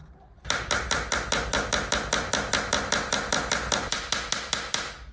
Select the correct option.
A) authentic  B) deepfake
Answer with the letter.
A